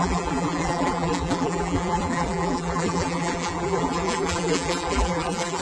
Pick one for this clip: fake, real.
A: fake